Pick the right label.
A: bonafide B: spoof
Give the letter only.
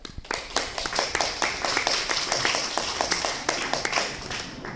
A